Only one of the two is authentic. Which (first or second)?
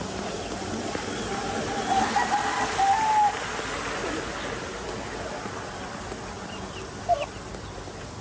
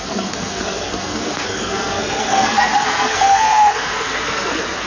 first